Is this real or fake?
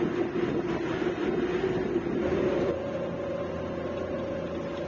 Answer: real